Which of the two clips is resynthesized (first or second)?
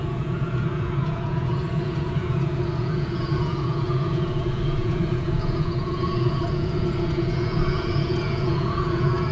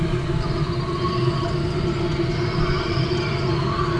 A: first